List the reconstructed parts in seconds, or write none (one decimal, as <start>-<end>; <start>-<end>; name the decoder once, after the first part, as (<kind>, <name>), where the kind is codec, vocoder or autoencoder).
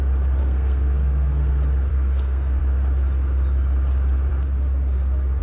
0.4-1.5 (codec, SNAC); 1.9-2.6